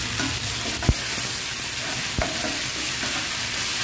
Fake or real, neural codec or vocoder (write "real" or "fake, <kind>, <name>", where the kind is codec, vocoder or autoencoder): real